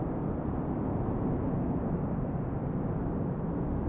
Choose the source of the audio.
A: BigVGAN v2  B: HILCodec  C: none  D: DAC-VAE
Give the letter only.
C